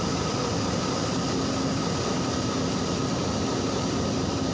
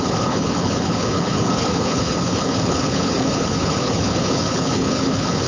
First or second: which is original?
first